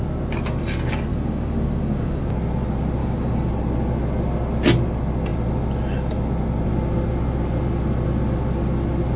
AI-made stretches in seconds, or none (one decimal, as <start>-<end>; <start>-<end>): 1.1-2.2; 3.0-3.5